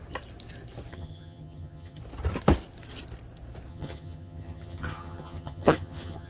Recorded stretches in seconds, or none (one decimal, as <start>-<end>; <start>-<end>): 0.0-0.9; 2.0-3.7